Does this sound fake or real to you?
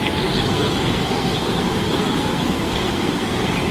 fake